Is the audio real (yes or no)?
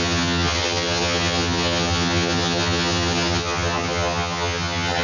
no